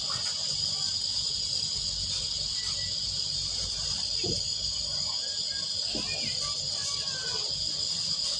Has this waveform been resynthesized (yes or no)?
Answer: no